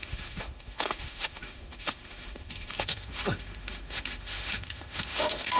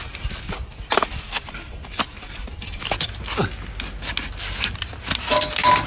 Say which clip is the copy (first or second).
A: first